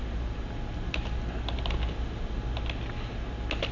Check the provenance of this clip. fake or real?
real